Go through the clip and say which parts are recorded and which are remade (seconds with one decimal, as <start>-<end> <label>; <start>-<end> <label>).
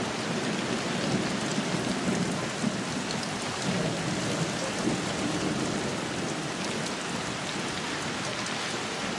0.0-9.2 recorded